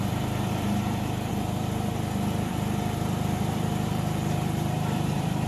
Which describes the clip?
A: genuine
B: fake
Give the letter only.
B